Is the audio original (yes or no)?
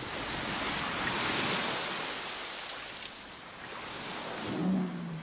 yes